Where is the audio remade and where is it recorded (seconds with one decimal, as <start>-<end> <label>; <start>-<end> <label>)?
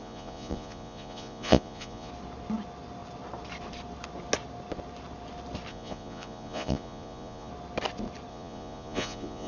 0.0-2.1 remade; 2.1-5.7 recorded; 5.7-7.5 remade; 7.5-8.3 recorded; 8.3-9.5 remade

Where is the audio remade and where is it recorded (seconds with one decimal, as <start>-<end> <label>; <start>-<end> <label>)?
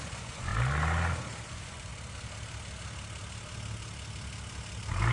0.0-0.5 remade; 0.5-1.5 recorded; 1.5-1.9 remade; 1.9-5.1 recorded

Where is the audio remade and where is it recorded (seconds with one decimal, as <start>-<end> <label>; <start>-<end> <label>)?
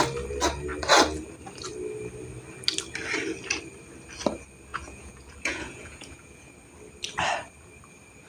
0.0-4.7 recorded; 4.7-6.5 remade; 6.5-8.3 recorded